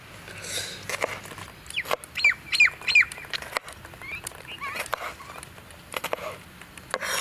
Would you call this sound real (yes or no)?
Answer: yes